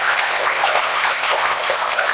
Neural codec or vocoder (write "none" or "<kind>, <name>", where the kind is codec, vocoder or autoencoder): codec, ZipCodec